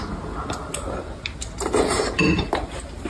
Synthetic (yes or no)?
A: no